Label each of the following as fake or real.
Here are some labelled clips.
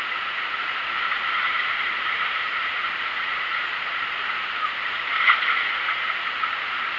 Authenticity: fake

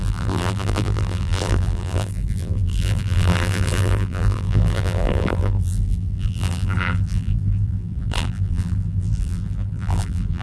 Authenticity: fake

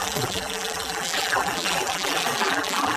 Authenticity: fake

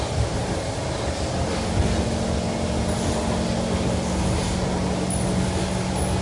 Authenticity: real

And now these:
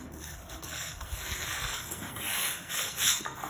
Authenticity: fake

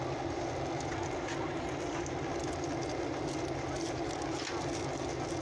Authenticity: real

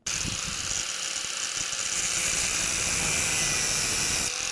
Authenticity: real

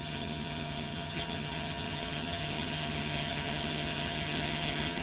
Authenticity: fake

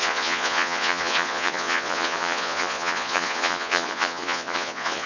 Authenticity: fake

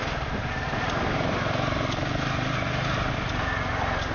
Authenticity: real